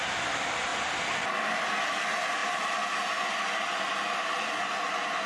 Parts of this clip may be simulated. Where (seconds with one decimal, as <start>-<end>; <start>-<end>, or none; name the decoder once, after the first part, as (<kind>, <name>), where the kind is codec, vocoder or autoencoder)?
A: none